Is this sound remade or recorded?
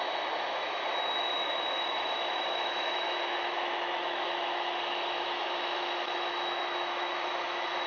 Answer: remade